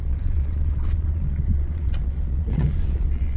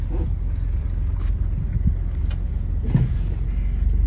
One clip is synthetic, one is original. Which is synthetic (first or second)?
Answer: first